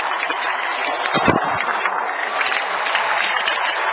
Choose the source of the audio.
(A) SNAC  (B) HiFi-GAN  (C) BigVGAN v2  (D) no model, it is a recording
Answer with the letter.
D